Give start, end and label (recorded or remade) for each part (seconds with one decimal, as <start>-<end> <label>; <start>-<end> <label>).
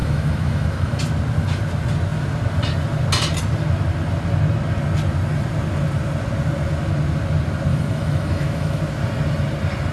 0.0-1.0 remade; 1.0-7.7 recorded; 7.7-8.8 remade; 8.8-9.9 recorded